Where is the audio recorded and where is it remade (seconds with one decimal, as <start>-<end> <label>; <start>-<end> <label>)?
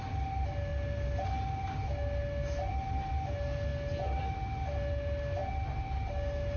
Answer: 0.0-6.6 recorded